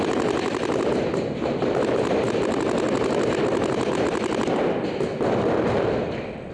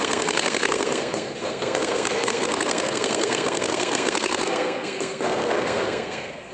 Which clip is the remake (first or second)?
second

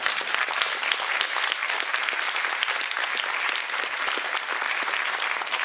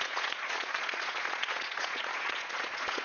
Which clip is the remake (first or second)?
second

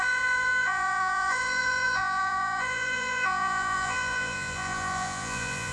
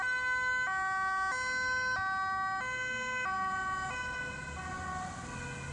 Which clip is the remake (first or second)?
first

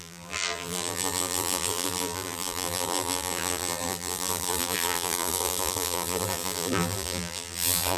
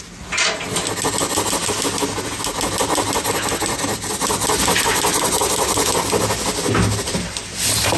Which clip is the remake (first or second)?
first